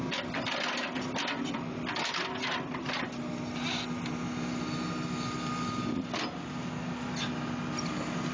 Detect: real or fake real